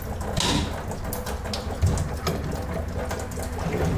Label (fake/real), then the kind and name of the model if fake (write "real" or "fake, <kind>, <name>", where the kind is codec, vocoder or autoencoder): real